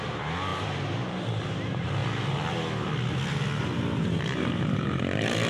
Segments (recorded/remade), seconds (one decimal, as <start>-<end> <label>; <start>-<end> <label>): 0.0-2.0 remade; 2.0-3.6 recorded; 3.6-5.5 remade